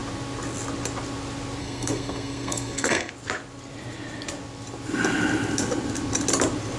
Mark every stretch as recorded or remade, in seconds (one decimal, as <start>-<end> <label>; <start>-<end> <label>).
0.0-1.6 recorded; 1.6-3.1 remade; 3.1-6.8 recorded